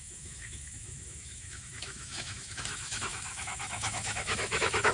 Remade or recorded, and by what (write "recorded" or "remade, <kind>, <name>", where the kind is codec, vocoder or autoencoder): remade, autoencoder, DAC-VAE